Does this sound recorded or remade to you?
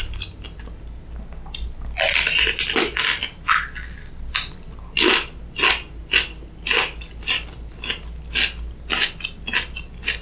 recorded